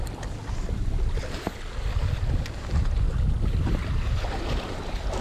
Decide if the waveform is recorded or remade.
recorded